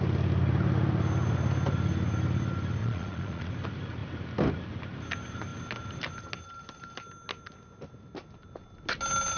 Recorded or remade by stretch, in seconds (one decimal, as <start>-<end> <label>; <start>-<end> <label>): 0.0-2.8 recorded; 2.8-3.5 remade; 3.5-9.4 recorded

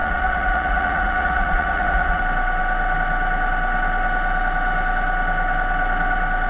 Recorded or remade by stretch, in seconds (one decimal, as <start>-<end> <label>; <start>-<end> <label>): 0.0-2.2 remade; 2.2-6.5 recorded

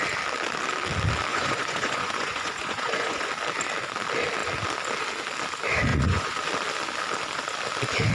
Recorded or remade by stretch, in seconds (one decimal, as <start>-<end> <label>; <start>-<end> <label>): 0.0-1.3 recorded; 1.3-3.3 remade; 3.3-5.9 recorded; 5.9-6.4 remade; 6.4-8.1 recorded

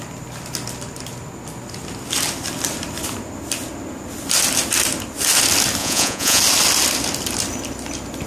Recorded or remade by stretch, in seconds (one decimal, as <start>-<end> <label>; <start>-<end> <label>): 0.0-5.8 recorded; 5.8-6.4 remade; 6.4-8.3 recorded

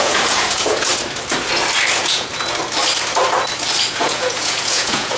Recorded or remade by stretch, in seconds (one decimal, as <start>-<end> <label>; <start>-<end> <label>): 0.0-0.9 remade; 0.9-1.9 recorded; 1.9-2.3 remade; 2.3-3.9 recorded; 3.9-5.2 remade

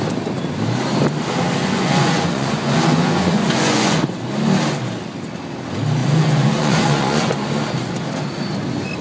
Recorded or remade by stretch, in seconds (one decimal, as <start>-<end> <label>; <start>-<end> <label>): 0.0-1.6 recorded; 1.6-4.0 remade; 4.0-6.0 recorded; 6.0-7.3 remade; 7.3-9.0 recorded